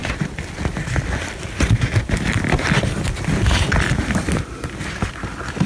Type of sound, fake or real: real